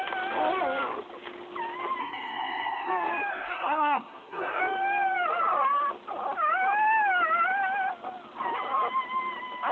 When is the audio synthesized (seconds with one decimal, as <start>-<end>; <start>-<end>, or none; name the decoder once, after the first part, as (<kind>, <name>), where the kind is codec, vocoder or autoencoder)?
2.0-2.9 (codec, SNAC); 3.3-4.6